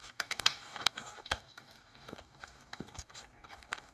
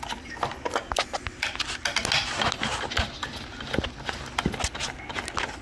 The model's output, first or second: first